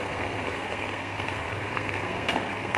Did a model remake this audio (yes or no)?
yes